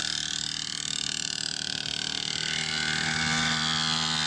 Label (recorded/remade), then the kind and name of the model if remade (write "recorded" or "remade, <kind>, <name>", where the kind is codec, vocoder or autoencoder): recorded